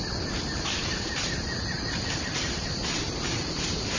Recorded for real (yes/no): no